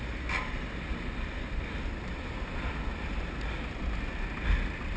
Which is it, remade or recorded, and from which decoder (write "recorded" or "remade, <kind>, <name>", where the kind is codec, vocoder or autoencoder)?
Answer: recorded